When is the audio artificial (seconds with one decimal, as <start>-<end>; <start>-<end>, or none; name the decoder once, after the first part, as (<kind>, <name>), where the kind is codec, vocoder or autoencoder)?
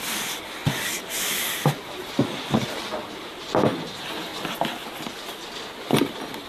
0.6-3.7 (vocoder, BigVGAN v2)